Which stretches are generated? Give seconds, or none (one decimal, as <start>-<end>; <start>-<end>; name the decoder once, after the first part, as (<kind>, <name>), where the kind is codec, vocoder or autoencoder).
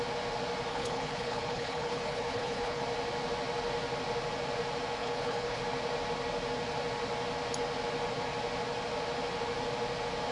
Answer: 0.7-2.8 (codec, HILCodec); 5.0-5.6